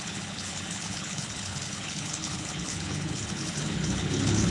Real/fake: fake